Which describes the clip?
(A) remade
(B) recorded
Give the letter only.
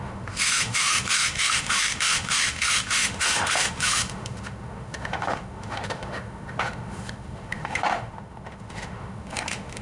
A